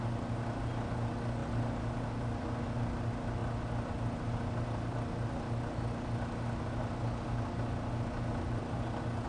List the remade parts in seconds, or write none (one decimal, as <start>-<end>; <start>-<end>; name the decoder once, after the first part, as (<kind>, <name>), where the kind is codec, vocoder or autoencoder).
none